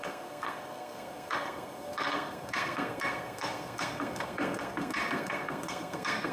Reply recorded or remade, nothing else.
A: remade